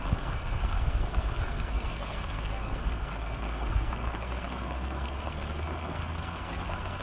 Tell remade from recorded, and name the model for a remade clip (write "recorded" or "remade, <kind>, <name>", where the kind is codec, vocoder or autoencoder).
remade, codec, SNAC